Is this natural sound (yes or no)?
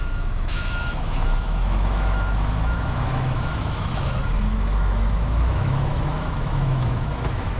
no